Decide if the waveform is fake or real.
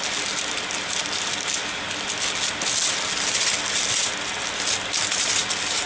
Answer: real